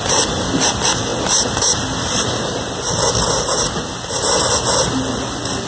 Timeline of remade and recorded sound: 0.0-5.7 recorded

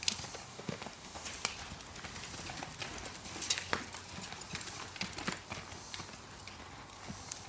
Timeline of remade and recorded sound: 0.0-0.5 recorded; 0.5-1.3 remade; 1.3-7.5 recorded